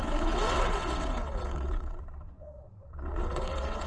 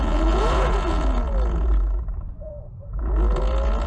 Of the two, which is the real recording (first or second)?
second